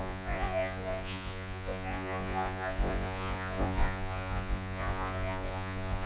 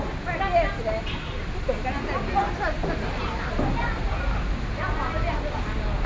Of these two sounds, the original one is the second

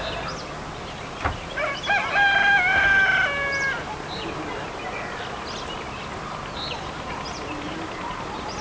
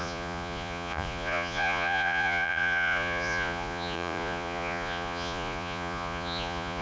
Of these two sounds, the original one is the first